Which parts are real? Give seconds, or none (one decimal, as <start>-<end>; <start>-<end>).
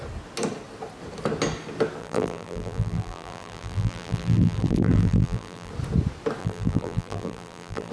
0.0-2.0; 5.7-6.4